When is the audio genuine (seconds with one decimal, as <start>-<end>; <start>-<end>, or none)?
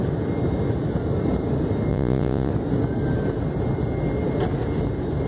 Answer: 0.0-1.9; 2.5-5.3